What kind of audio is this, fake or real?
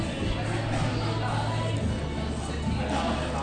real